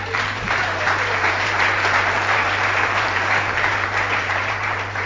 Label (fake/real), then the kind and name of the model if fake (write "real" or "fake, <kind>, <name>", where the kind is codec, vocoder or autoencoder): fake, vocoder, BigVGAN v2